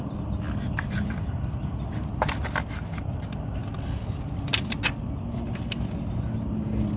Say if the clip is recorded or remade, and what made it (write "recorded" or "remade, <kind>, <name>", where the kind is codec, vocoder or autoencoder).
recorded